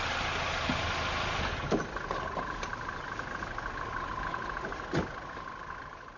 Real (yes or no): yes